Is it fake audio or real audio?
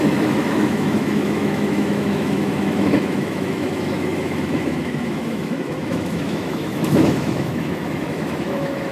fake